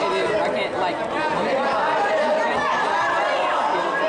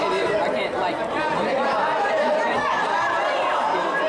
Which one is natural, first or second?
first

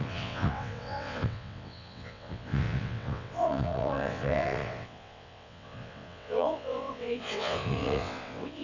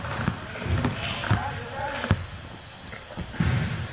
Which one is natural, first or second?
second